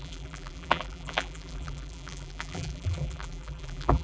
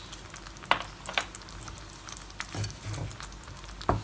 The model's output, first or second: first